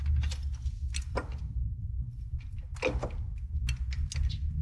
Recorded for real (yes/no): yes